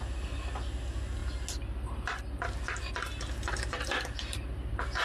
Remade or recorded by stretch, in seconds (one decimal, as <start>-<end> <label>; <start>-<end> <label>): 0.0-5.0 recorded